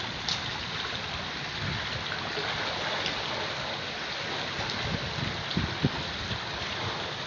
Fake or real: real